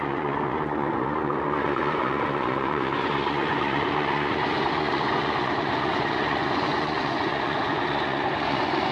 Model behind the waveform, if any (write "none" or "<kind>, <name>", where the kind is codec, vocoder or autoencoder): vocoder, Vocos